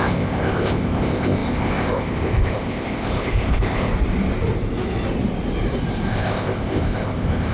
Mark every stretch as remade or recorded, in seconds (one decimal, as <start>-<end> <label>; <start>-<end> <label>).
0.0-3.9 remade; 3.9-6.1 recorded; 6.1-7.5 remade